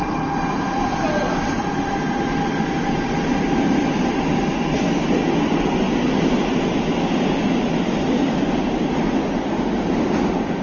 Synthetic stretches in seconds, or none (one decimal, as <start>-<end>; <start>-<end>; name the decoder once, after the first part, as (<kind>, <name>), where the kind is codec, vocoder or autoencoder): none